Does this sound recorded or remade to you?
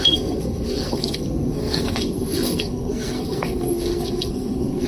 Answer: remade